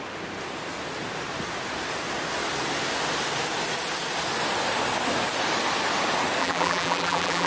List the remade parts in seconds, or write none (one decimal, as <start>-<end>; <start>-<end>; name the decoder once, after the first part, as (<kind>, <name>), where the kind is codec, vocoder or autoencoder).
6.4-7.5 (vocoder, BigVGAN v2)